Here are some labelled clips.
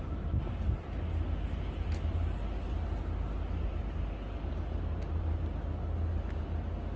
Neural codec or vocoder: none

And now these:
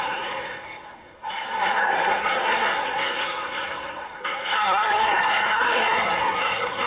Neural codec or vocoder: codec, SNAC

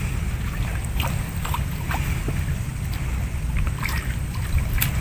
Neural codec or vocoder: none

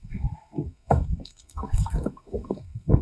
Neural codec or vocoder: codec, SNAC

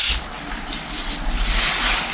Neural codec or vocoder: none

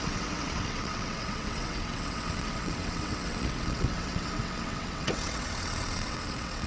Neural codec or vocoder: vocoder, WaveNeXt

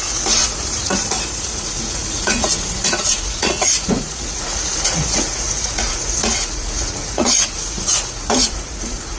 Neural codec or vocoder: vocoder, Vocos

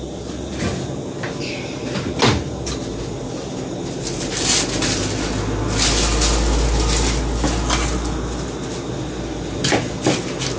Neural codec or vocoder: none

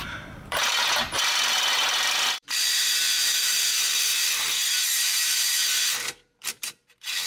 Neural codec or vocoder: vocoder, BigVGAN v2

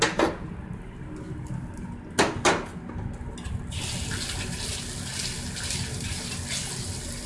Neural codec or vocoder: none